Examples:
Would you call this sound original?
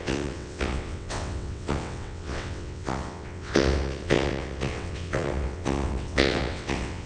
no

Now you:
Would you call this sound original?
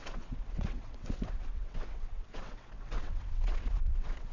no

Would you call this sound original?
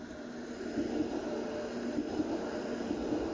yes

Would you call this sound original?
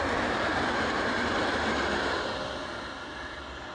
yes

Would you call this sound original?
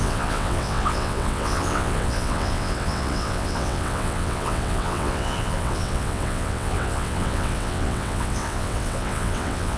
no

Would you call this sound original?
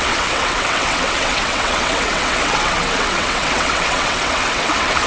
no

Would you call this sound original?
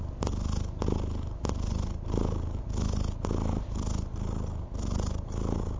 yes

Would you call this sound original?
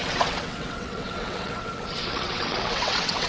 no